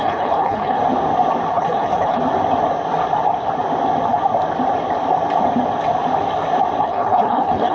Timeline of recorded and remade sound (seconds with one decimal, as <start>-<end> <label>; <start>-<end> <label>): 0.0-0.8 remade; 0.8-1.5 recorded; 1.5-2.2 remade; 2.2-6.8 recorded; 6.8-7.7 remade